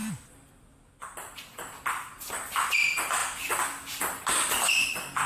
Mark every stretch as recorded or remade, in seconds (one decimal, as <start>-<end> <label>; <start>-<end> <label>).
0.0-5.3 recorded